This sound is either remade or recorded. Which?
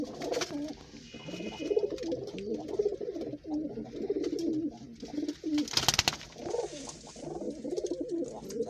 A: recorded